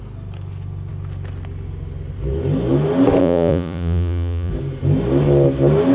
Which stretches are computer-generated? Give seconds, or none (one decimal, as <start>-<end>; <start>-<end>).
3.2-4.5